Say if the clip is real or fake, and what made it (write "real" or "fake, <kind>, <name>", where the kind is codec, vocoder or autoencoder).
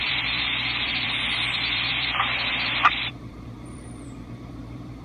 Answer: fake, vocoder, BigVGAN v2